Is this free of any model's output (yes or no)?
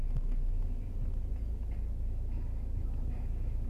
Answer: yes